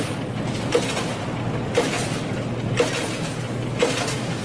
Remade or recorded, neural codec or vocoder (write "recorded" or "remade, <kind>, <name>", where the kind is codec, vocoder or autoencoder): recorded